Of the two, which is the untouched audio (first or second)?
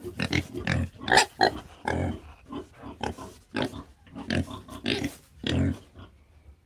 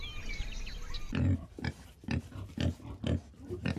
first